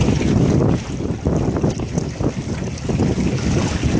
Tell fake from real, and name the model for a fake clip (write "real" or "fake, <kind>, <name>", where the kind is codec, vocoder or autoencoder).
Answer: real